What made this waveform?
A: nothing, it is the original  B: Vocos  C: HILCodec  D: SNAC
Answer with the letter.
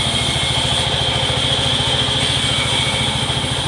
A